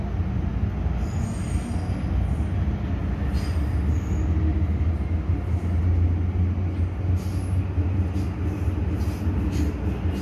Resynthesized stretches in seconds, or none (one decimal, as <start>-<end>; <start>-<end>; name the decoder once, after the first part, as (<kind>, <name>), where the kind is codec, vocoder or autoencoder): none